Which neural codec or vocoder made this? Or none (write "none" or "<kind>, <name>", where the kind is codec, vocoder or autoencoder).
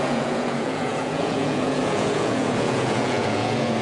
vocoder, Vocos